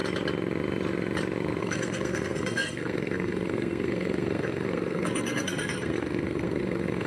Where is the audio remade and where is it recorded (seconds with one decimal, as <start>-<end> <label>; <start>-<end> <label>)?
0.0-1.6 recorded; 1.6-7.1 remade